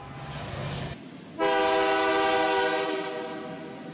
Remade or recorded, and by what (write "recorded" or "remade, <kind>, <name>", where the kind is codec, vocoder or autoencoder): recorded